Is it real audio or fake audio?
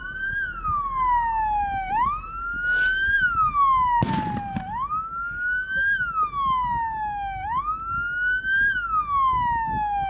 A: real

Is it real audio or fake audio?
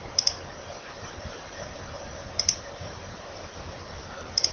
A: fake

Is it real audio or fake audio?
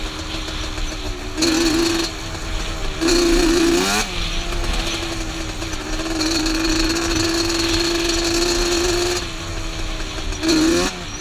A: real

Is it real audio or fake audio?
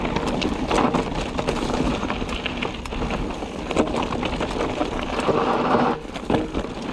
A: real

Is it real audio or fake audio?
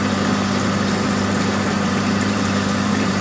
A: fake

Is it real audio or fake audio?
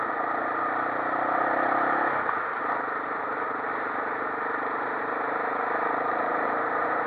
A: fake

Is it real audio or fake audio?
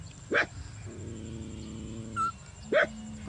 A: real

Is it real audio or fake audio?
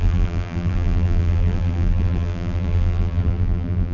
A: fake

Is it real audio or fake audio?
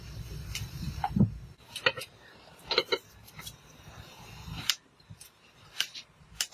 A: fake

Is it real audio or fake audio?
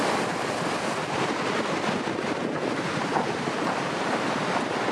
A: real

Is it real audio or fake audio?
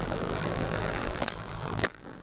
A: fake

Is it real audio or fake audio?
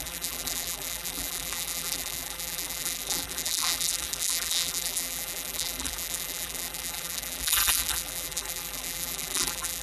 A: fake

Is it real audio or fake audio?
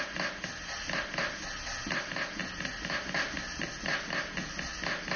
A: real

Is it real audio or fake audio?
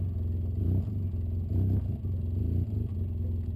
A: real